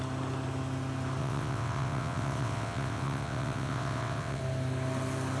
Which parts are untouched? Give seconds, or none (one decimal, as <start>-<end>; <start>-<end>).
0.0-1.2; 4.4-5.4